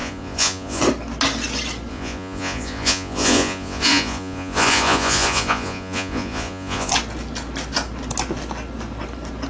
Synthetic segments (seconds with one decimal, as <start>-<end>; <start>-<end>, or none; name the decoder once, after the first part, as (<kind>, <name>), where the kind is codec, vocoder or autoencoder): 0.0-0.8 (vocoder, Vocos); 1.9-6.9